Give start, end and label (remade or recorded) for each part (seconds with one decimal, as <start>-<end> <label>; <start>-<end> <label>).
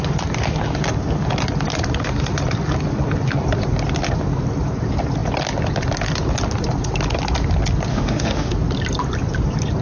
0.0-7.9 recorded; 7.9-8.5 remade; 8.5-9.8 recorded